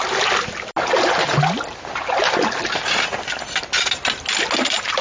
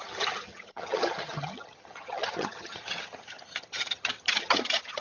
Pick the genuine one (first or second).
first